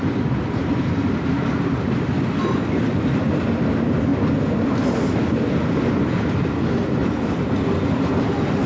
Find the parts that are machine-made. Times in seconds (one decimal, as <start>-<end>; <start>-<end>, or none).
0.0-2.1